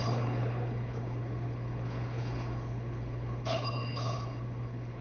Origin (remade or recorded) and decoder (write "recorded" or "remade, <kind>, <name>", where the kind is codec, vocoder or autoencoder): remade, codec, HILCodec